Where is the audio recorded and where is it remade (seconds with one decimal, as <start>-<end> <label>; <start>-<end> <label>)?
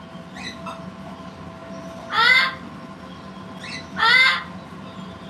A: 0.0-5.3 recorded